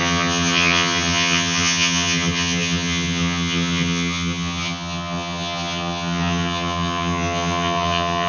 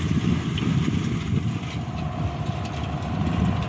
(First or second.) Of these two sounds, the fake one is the first